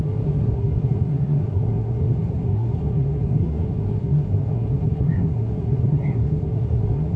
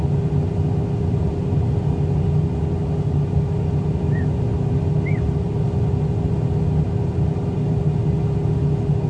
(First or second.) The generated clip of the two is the first